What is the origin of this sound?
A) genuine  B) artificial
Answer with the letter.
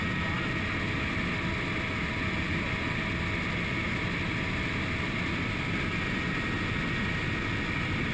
A